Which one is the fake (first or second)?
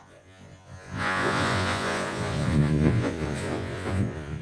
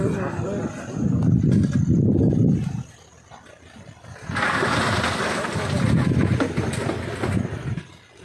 first